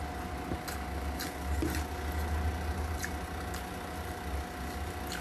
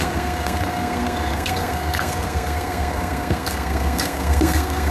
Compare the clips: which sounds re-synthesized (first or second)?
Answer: second